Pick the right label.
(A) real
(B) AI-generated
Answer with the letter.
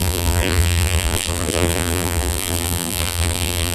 B